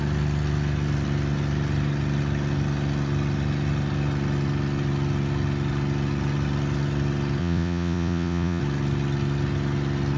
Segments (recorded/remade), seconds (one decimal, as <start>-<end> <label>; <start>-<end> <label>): 0.0-7.4 recorded; 7.4-8.6 remade; 8.6-10.2 recorded